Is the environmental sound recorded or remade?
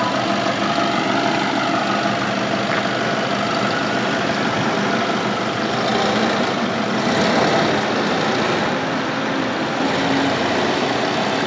recorded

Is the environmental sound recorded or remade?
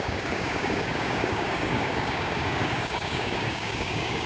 remade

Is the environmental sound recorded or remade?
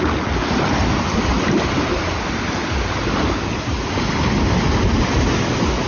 recorded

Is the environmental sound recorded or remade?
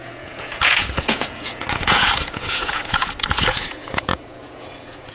remade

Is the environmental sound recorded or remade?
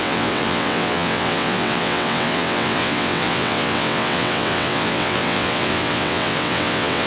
remade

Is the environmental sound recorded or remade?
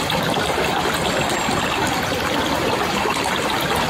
remade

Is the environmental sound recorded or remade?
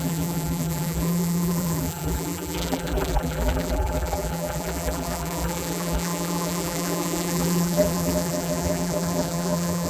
remade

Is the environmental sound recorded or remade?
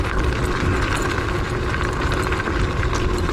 recorded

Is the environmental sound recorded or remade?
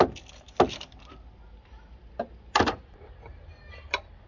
recorded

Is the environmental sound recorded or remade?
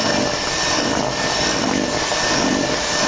recorded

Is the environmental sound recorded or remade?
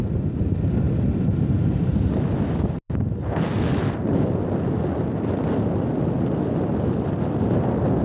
recorded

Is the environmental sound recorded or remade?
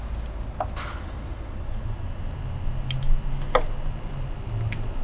recorded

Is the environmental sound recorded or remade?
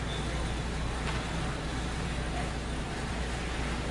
recorded